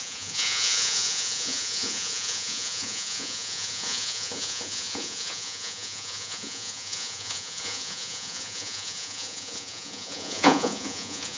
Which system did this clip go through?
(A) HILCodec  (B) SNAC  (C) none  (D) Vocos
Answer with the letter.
D